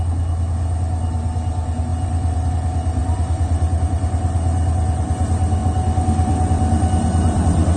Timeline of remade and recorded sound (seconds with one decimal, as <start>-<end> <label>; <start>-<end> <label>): 0.0-1.9 recorded; 1.9-2.5 remade; 2.5-3.0 recorded; 3.0-3.8 remade; 3.8-5.6 recorded; 5.6-7.8 remade